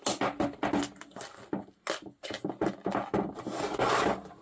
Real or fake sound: real